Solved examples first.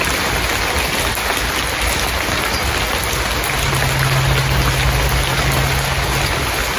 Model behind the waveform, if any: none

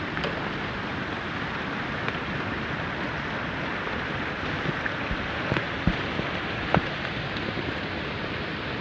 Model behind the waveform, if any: none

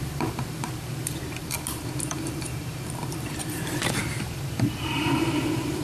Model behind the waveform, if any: vocoder, BigVGAN v2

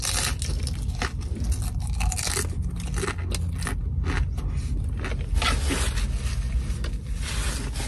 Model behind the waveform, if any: none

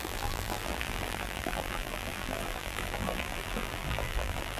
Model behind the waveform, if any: vocoder, BigVGAN v2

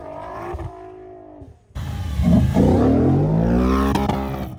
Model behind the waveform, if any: none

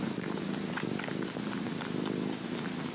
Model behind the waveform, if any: none